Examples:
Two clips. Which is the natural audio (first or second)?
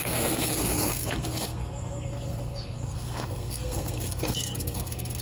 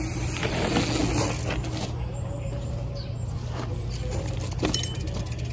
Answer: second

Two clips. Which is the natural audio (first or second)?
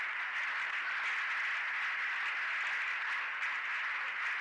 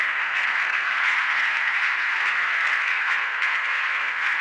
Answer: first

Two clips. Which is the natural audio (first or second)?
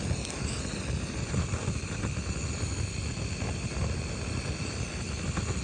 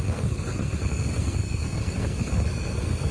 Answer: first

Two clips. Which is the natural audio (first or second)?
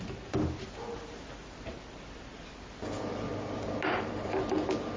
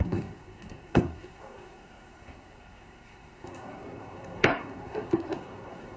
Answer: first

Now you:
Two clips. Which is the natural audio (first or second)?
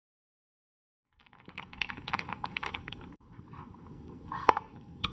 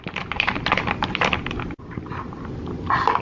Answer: second